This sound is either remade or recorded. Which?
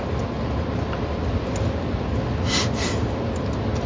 recorded